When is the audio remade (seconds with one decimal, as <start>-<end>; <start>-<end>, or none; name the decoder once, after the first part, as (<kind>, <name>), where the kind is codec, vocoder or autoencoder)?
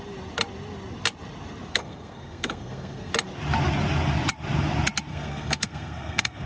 1.7-3.1 (codec, SNAC); 5.1-6.5